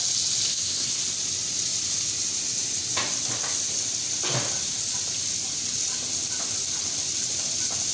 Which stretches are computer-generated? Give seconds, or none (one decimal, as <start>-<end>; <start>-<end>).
0.5-1.0